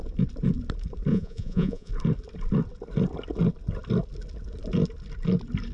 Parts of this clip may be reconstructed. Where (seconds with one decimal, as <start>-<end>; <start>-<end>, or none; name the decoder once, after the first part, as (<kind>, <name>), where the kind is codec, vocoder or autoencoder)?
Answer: 1.1-1.9 (vocoder, Vocos)